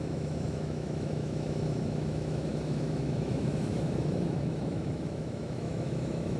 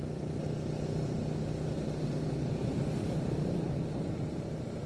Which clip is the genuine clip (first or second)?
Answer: second